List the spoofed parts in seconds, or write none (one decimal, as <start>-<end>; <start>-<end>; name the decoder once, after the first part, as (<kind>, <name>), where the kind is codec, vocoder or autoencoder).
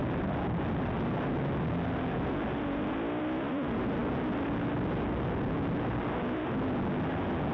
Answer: none